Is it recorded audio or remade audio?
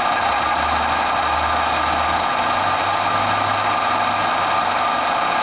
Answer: recorded